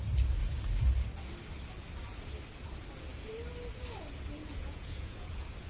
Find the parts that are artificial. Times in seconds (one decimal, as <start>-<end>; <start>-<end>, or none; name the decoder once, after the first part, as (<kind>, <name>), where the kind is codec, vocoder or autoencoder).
4.4-5.7 (vocoder, Vocos)